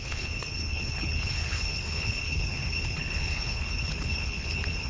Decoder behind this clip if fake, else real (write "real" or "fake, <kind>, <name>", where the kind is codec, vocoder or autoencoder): fake, codec, HILCodec